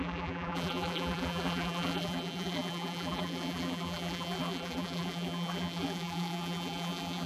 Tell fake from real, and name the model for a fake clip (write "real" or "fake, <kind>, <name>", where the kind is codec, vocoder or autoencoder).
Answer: fake, vocoder, BigVGAN v2